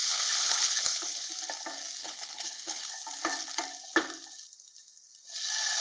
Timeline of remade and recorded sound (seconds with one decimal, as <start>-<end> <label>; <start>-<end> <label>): 0.0-1.3 remade; 1.3-2.0 recorded; 2.0-2.9 remade; 2.9-5.8 recorded